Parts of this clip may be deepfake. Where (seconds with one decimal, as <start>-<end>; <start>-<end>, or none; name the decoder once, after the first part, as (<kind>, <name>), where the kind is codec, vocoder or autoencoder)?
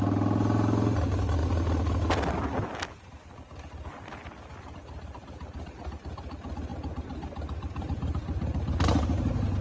none